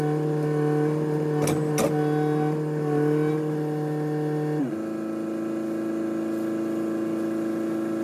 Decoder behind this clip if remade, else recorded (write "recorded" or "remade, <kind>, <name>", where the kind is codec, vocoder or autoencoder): recorded